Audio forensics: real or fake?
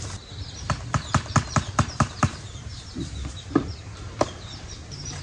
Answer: fake